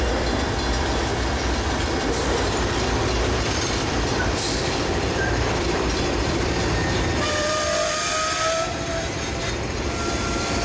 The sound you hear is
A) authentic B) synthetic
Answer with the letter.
B